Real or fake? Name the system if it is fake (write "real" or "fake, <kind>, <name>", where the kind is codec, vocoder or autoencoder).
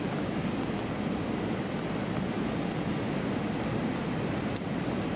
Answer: real